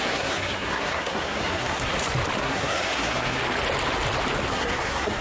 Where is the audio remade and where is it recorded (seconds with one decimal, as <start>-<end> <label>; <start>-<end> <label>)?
0.0-1.9 remade; 1.9-2.4 recorded; 2.4-3.4 remade; 3.4-4.5 recorded; 4.5-5.2 remade